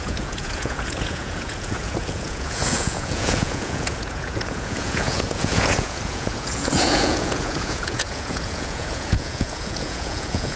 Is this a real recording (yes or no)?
no